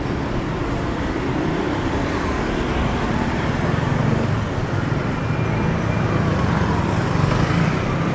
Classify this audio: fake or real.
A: real